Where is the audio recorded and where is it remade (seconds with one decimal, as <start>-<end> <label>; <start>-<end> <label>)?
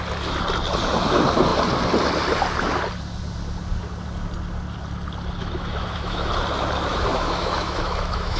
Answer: 0.0-5.4 recorded; 5.4-6.3 remade; 6.3-6.9 recorded; 6.9-8.4 remade